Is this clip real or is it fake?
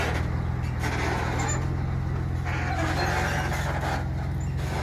real